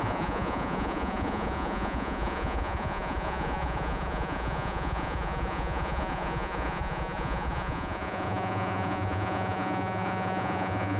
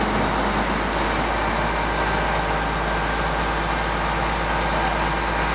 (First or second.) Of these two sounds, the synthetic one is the first